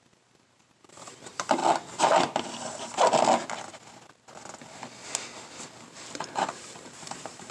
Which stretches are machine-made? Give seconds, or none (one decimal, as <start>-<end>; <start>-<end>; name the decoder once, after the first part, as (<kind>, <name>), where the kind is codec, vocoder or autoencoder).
0.0-1.6 (vocoder, BigVGAN v2); 6.1-7.5